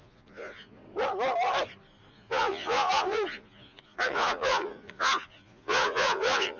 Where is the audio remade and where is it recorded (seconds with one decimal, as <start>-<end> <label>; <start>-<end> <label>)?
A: 0.0-0.8 remade; 0.8-2.1 recorded; 2.1-6.6 remade